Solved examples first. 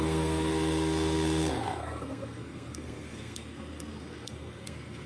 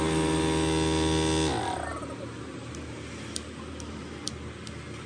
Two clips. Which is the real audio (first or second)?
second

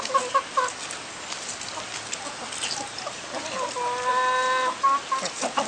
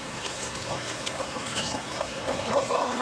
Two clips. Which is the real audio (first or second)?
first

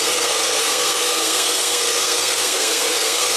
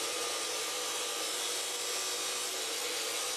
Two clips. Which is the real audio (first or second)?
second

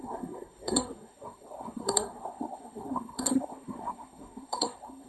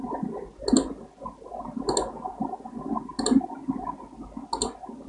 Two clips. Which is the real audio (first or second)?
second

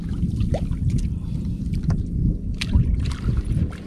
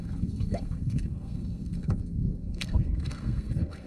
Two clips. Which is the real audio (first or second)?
first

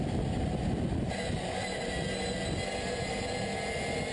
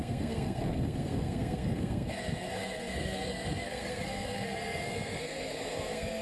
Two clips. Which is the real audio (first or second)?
first